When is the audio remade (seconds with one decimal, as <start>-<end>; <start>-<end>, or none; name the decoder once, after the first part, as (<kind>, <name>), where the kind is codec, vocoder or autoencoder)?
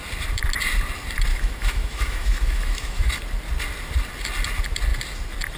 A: 1.3-3.1 (autoencoder, DAC-VAE)